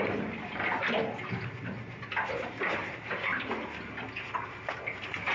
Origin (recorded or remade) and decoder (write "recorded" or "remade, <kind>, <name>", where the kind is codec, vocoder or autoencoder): recorded